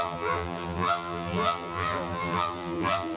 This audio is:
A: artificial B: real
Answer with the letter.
A